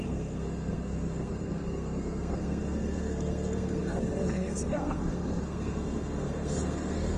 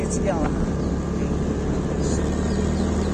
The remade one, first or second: first